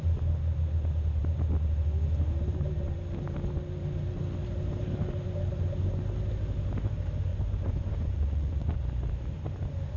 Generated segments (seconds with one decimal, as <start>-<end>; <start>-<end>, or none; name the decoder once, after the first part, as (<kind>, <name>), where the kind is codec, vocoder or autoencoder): 7.3-8.8 (vocoder, Vocos)